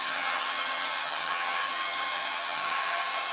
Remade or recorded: remade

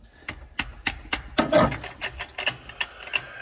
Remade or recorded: recorded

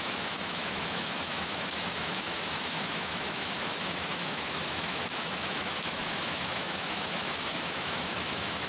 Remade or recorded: remade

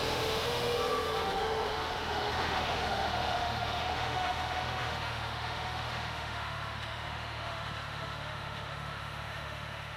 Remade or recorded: remade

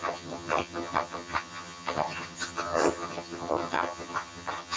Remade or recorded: remade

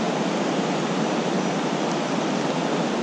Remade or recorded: recorded